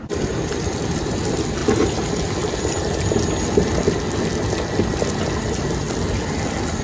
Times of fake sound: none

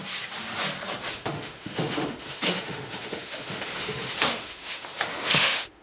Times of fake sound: 1.1-5.8 (autoencoder, DAC-VAE)

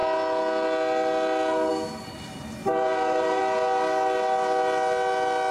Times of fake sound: 2.6-3.4 (vocoder, BigVGAN v2)

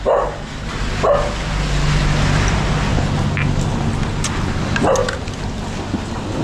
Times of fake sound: none

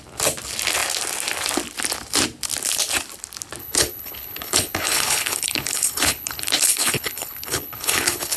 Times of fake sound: 3.6-8.4 (codec, HILCodec)